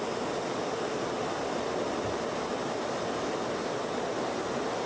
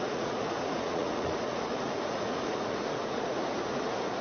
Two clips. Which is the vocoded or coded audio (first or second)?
second